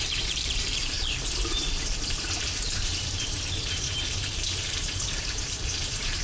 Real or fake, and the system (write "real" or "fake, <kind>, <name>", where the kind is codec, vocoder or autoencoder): fake, vocoder, BigVGAN v2